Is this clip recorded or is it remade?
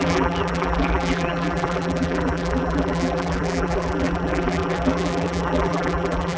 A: remade